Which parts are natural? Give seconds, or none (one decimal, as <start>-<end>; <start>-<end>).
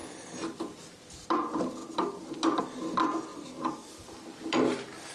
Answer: 0.0-5.1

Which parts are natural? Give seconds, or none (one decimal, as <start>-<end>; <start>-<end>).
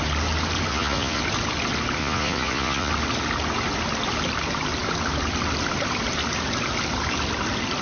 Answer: 0.0-0.7; 1.2-2.0; 2.9-7.8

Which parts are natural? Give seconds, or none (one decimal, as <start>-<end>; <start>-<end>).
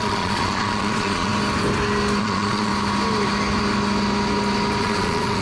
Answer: 1.3-2.2; 2.7-4.8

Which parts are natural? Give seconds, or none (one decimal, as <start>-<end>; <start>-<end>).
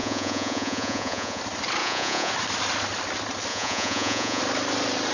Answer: 1.4-1.8; 2.3-3.5; 4.4-5.1